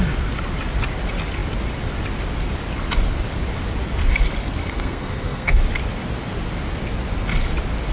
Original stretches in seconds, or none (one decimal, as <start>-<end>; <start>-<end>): 0.0-4.6; 5.6-7.9